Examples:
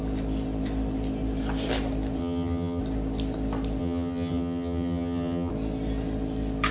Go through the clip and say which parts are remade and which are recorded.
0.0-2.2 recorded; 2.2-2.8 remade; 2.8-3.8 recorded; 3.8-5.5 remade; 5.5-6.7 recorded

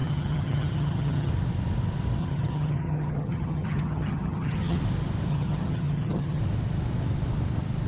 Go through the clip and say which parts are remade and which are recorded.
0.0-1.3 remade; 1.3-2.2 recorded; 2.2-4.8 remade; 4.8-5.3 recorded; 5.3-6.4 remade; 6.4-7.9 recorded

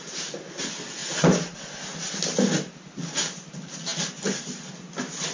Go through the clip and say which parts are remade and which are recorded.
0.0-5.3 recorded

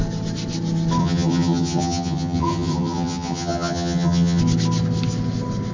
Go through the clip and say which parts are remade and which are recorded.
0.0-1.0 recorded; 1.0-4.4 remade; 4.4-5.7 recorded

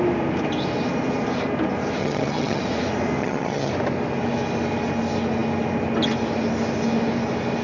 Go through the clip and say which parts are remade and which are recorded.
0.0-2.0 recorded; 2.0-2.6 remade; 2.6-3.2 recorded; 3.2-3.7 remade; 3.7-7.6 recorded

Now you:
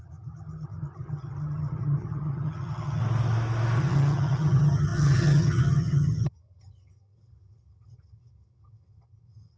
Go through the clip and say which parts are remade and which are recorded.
0.0-3.0 remade; 3.0-3.8 recorded; 3.8-9.6 remade

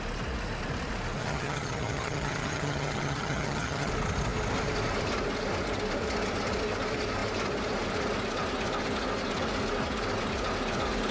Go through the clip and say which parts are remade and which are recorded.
0.0-1.2 recorded; 1.2-3.9 remade; 3.9-11.1 recorded

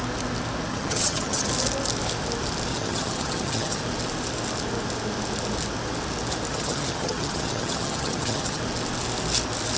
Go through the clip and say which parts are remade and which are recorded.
0.0-0.7 recorded; 0.7-1.5 remade; 1.5-2.7 recorded; 2.7-3.8 remade; 3.8-6.5 recorded; 6.5-8.6 remade; 8.6-9.8 recorded